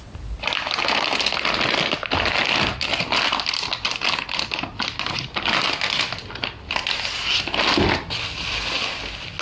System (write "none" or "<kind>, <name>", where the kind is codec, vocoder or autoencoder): none